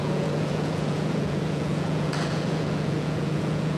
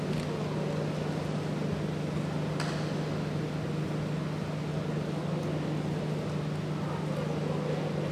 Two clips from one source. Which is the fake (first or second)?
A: first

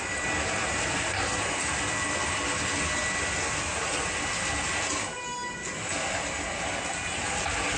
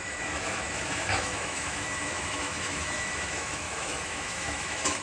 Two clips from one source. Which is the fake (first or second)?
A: second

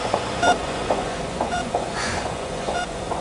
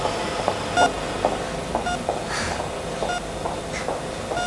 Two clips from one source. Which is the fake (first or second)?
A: first